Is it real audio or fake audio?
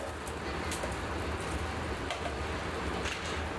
real